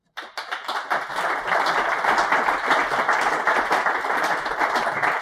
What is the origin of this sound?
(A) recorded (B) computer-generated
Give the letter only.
A